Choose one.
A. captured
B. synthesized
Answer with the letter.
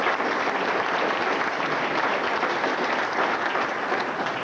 A